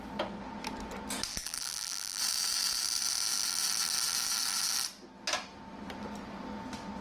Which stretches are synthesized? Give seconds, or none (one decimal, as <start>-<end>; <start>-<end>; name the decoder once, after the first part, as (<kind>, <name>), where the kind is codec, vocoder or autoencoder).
1.3-2.2 (vocoder, BigVGAN v2)